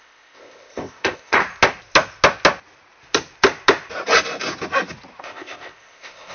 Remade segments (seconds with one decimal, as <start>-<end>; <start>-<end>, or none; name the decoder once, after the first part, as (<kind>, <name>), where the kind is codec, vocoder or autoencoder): 0.0-1.4 (codec, ZipCodec); 5.2-6.3